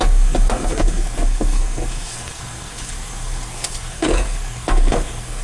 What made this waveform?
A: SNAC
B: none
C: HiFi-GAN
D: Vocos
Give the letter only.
A